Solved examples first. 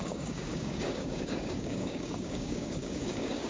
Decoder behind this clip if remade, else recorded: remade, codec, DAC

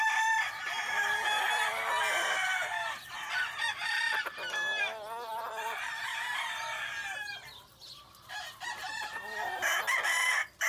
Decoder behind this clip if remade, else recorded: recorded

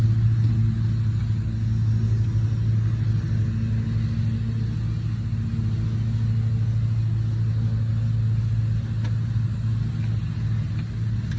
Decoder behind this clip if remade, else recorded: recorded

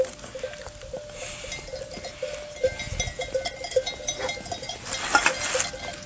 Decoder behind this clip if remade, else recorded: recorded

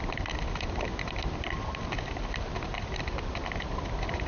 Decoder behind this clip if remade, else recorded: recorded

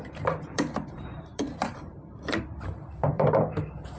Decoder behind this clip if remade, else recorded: remade, vocoder, BigVGAN v2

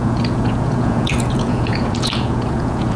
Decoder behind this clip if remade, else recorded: remade, vocoder, Vocos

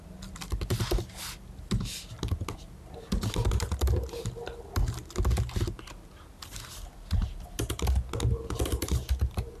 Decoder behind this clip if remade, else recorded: recorded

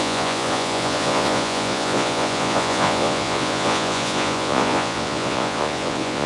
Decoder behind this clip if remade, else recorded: remade, vocoder, Vocos